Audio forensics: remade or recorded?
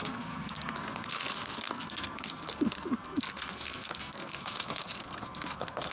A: remade